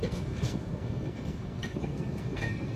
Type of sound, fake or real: fake